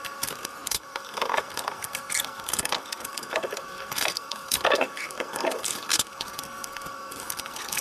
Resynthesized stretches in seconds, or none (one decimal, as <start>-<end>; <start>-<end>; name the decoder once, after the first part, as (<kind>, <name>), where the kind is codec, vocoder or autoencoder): 0.0-7.8 (codec, SNAC)